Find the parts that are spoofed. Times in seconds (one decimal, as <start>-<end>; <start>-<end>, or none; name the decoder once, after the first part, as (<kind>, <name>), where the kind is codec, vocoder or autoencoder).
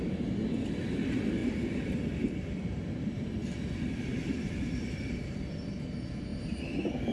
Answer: 1.4-5.2 (vocoder, BigVGAN v2)